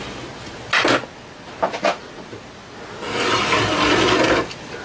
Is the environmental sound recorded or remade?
recorded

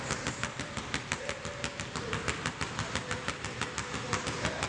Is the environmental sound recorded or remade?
recorded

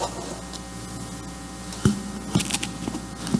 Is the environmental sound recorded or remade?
recorded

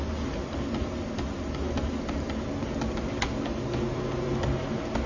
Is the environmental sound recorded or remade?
recorded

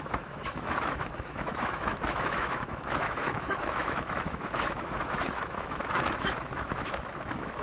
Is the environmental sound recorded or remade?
remade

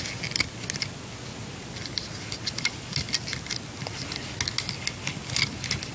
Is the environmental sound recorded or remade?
recorded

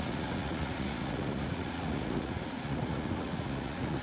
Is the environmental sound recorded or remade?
remade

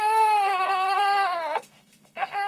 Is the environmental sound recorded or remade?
remade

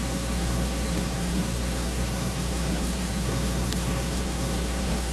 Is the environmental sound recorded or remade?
remade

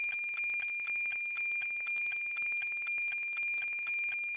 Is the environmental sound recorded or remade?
recorded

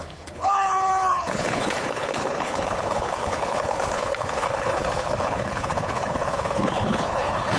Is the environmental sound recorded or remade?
remade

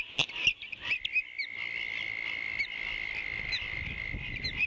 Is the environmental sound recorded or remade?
recorded